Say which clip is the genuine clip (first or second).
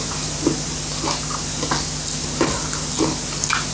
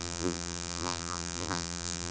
first